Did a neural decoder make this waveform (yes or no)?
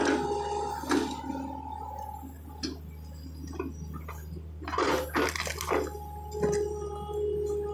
no